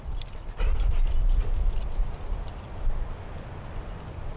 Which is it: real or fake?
real